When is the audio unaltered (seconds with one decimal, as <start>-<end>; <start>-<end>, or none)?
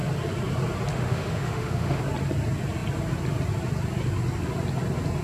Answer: 0.0-0.9; 2.0-5.2